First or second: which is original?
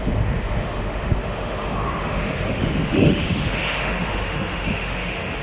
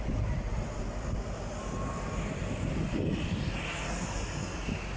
second